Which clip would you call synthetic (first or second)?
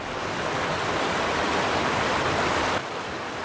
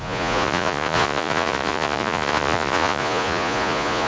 second